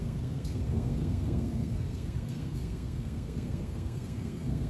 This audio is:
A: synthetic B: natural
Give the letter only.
A